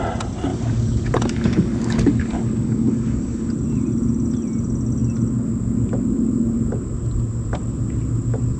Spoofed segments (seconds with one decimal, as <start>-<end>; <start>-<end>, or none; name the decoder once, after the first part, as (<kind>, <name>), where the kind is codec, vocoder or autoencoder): 0.5-3.5 (codec, DAC)